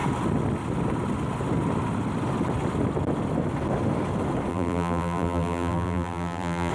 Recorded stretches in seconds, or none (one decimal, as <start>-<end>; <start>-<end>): 0.0-4.5